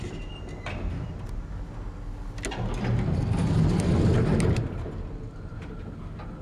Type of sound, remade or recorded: recorded